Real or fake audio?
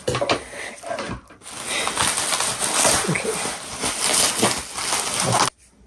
real